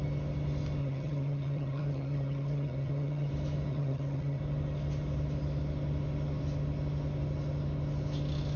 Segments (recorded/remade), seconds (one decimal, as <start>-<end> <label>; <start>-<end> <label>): 0.0-0.8 recorded; 0.8-3.3 remade; 3.3-3.7 recorded; 3.7-4.4 remade; 4.4-8.6 recorded